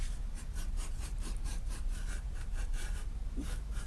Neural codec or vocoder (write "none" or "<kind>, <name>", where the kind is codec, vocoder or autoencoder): vocoder, BigVGAN v2